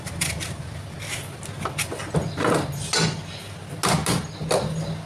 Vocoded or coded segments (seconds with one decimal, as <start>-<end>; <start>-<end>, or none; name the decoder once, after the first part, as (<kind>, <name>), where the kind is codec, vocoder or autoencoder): none